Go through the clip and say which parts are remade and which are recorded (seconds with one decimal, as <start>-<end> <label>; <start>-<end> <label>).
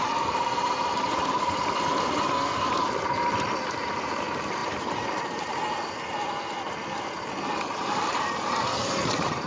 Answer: 0.0-9.5 recorded